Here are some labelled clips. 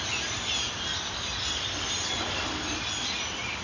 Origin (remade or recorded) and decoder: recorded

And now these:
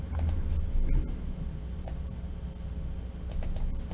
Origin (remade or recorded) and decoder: recorded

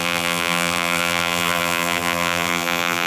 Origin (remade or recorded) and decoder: remade, vocoder, BigVGAN v2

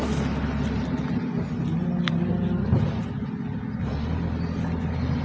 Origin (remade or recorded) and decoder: recorded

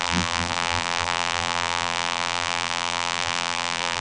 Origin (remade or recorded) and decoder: remade, vocoder, BigVGAN v2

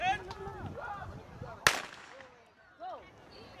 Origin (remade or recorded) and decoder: recorded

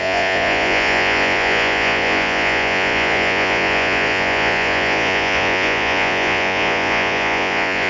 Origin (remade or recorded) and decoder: remade, vocoder, Vocos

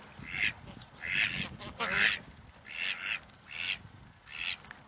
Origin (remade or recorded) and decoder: recorded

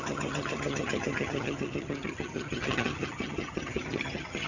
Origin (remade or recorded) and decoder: remade, vocoder, HiFi-GAN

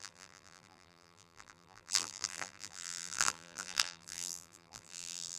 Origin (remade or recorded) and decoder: remade, vocoder, BigVGAN v2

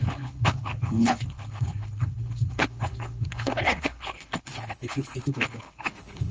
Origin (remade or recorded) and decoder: remade, codec, HILCodec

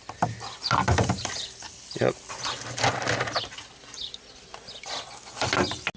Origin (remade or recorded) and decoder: recorded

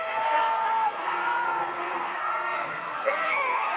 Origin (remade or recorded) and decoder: remade, codec, SNAC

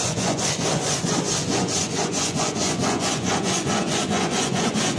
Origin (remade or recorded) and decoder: remade, vocoder, Vocos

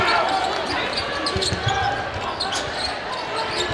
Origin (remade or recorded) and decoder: recorded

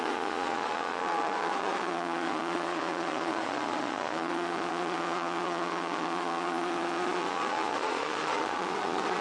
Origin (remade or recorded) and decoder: remade, vocoder, Vocos